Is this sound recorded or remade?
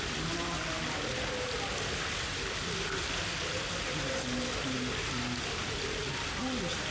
recorded